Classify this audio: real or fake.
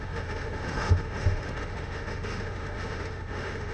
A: fake